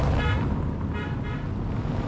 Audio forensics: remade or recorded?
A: recorded